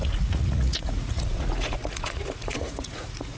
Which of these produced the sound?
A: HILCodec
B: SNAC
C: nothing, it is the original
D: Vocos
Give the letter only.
D